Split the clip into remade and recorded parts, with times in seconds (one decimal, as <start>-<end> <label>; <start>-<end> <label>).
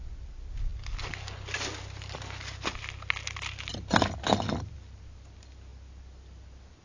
0.0-6.8 recorded